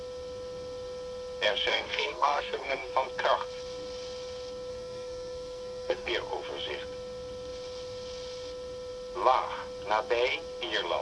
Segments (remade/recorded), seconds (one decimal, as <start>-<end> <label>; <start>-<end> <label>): 0.0-1.7 recorded; 1.7-2.9 remade; 2.9-4.7 recorded; 4.7-6.1 remade; 6.1-11.0 recorded